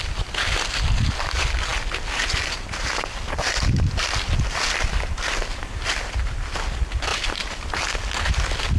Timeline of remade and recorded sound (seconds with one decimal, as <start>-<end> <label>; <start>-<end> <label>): 0.0-8.8 recorded